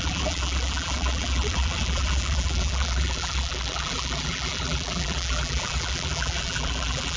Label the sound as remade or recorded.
remade